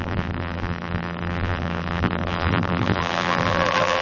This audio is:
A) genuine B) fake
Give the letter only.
B